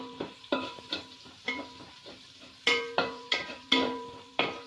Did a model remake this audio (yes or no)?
yes